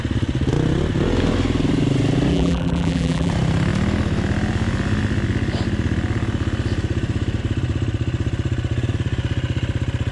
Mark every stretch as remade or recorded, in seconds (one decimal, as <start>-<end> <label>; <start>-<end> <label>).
0.0-2.3 recorded; 2.3-3.3 remade; 3.3-10.1 recorded